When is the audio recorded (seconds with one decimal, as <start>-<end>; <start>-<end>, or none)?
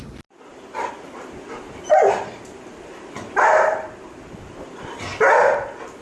0.0-6.0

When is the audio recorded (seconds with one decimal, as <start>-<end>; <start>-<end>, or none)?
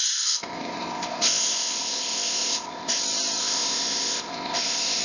3.0-3.4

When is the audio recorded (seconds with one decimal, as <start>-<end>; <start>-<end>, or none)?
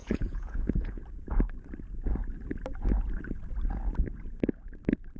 1.0-5.2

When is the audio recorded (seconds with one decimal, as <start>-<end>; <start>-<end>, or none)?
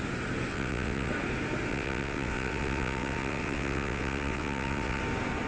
0.0-0.5; 1.1-1.7; 5.0-5.5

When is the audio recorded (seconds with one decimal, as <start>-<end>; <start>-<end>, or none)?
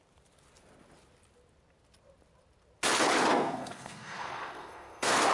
0.0-3.3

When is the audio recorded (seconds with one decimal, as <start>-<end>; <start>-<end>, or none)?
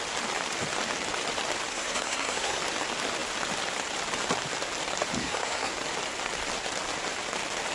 0.0-1.7; 2.6-5.2; 5.7-7.7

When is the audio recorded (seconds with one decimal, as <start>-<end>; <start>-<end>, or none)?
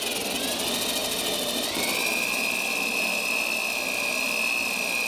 0.0-5.1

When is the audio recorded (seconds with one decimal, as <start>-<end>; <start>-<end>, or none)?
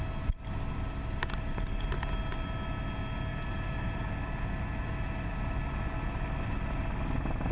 0.0-3.3; 4.1-7.5